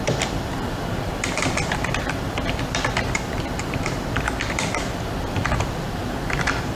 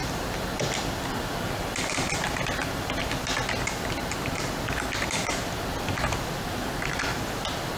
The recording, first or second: second